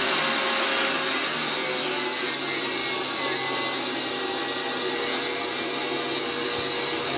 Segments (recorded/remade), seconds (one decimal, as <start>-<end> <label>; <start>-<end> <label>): 0.0-7.2 recorded